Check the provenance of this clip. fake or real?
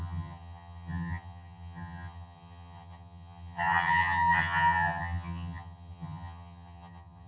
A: fake